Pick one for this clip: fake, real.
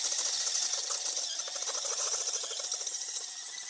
real